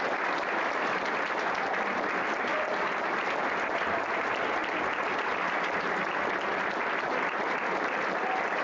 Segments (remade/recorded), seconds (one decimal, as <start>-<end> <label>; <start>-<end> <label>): 0.0-8.6 recorded